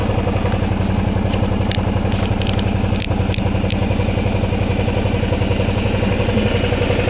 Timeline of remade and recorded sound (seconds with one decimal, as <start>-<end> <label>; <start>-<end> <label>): 0.0-7.1 recorded